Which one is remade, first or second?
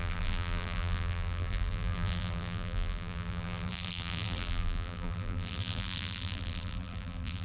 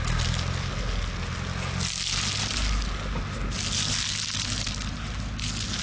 first